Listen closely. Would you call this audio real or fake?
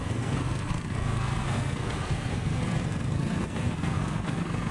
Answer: fake